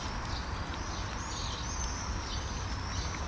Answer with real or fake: real